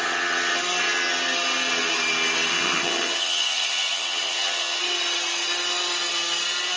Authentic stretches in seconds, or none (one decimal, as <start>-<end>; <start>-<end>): 0.0-2.5; 4.8-6.8